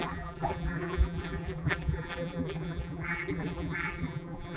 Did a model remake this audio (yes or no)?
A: yes